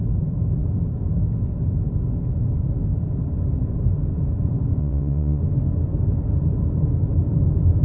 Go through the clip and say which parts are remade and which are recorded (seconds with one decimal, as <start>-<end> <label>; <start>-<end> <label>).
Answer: 0.0-4.8 recorded; 4.8-5.4 remade; 5.4-7.8 recorded